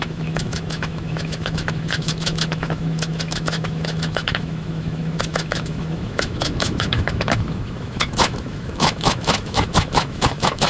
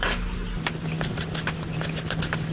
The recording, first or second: second